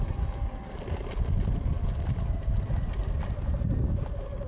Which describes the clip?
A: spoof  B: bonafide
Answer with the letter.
B